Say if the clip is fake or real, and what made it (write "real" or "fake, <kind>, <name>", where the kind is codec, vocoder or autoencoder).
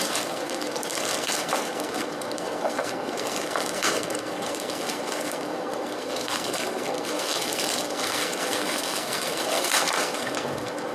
fake, codec, SNAC